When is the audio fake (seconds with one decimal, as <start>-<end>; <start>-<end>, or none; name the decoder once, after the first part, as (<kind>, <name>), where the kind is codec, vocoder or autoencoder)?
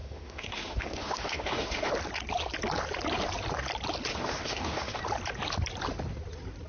0.0-1.9 (autoencoder, DAC-VAE); 4.1-5.0